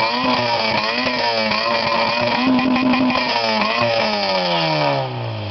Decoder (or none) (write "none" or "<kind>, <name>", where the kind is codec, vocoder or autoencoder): none